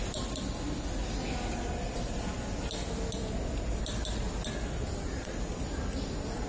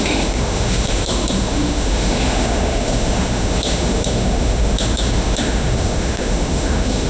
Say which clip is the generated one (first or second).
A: second